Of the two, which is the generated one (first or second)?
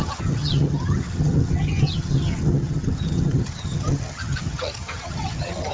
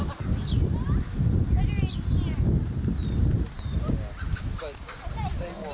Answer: first